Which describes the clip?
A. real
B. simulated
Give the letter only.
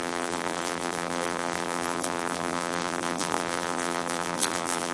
B